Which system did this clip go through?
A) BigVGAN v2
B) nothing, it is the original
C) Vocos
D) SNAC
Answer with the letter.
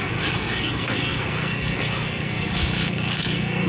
D